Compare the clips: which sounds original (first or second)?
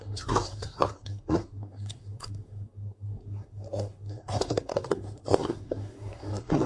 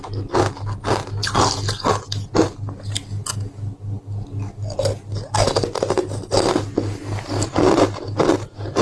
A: second